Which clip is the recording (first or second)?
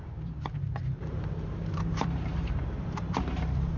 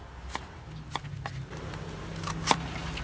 second